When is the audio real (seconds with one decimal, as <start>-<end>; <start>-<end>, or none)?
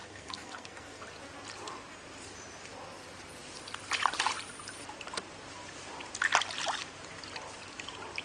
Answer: 1.0-8.2